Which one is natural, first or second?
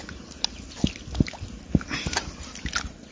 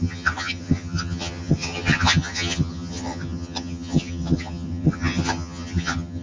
first